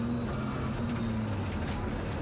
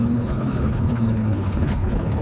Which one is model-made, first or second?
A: second